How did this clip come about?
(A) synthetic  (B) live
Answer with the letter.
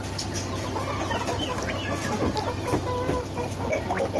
B